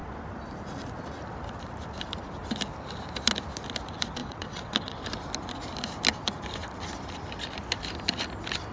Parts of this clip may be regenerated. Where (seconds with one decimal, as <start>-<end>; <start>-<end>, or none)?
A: 4.2-5.0